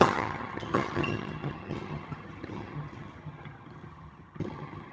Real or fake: fake